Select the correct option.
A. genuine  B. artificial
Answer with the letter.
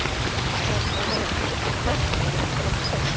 A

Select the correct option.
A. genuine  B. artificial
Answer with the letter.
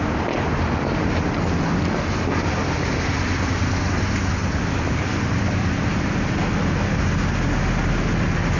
A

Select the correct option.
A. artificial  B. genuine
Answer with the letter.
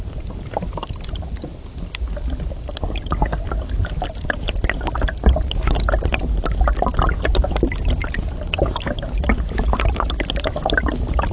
B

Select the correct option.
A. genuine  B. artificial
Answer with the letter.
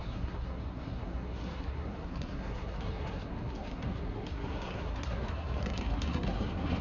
B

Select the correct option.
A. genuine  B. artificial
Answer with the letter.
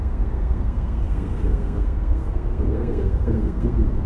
B